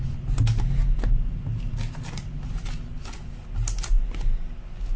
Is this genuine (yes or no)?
yes